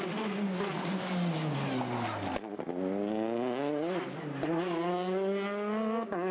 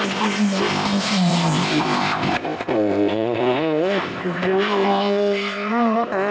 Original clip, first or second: first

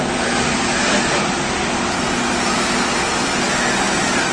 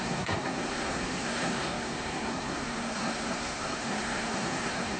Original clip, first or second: first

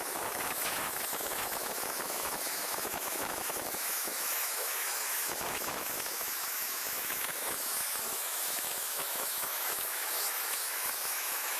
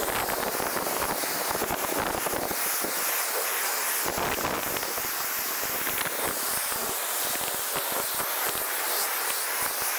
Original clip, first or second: second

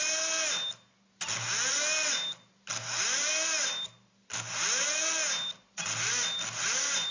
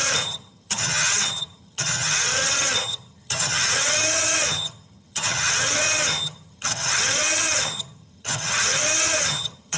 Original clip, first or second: first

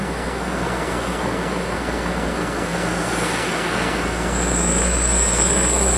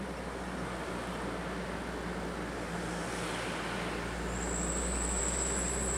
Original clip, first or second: second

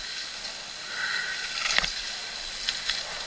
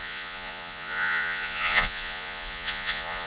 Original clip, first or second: first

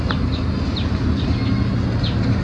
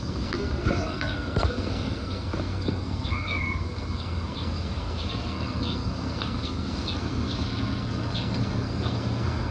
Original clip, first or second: first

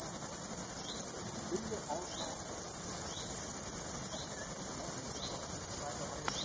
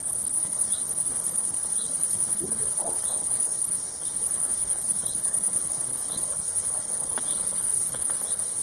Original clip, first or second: first